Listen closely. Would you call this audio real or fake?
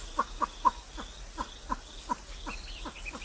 real